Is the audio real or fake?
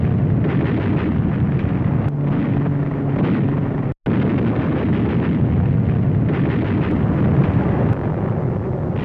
real